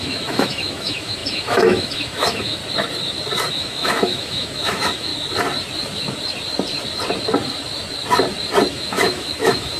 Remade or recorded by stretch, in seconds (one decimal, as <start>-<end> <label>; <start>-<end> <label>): 0.0-2.6 remade; 2.6-3.5 recorded; 3.5-5.1 remade; 5.1-8.7 recorded; 8.7-9.8 remade